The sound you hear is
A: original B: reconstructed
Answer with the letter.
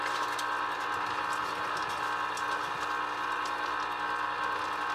A